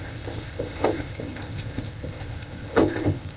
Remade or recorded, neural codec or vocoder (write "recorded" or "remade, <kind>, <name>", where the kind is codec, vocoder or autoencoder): remade, codec, ZipCodec